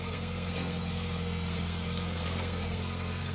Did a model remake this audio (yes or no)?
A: yes